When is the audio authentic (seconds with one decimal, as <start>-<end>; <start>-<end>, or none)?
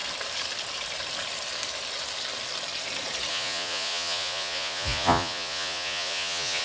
0.0-3.3